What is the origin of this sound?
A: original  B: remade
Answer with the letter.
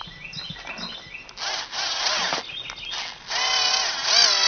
A